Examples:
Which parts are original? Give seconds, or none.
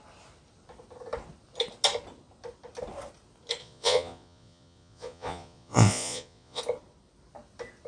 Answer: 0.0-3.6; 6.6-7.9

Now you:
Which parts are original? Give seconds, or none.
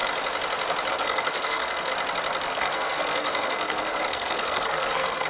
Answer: 0.0-0.9; 1.9-2.5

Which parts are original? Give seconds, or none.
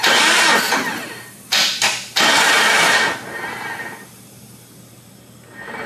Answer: 0.0-5.9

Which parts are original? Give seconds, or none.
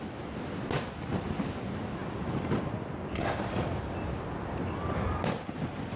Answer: 0.0-6.0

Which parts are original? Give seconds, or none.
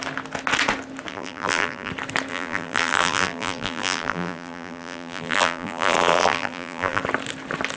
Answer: 0.0-1.1; 1.9-2.3; 7.0-7.8